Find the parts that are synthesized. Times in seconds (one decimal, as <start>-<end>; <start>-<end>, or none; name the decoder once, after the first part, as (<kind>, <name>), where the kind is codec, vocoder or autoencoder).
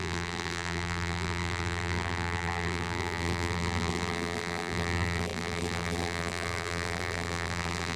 0.0-8.0 (vocoder, BigVGAN v2)